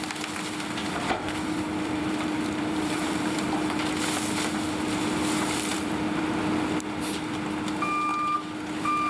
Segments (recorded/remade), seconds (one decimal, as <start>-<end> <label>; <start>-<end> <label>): 0.0-0.8 recorded; 0.8-3.5 remade; 3.5-5.7 recorded; 5.7-6.4 remade; 6.4-8.1 recorded; 8.1-9.1 remade